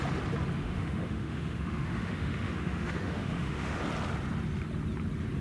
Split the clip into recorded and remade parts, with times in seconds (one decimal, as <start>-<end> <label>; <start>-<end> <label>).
0.0-0.6 recorded; 0.6-3.8 remade; 3.8-5.4 recorded